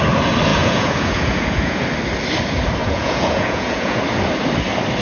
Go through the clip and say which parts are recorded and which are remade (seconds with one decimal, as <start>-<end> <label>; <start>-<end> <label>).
0.0-0.5 recorded; 0.5-1.8 remade; 1.8-2.8 recorded; 2.8-4.0 remade; 4.0-5.0 recorded